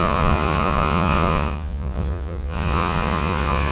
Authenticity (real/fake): fake